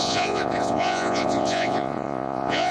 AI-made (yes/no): yes